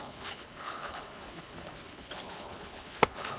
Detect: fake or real fake